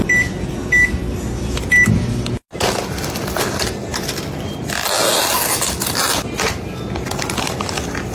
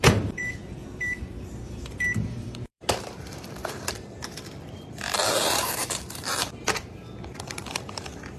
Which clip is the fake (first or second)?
second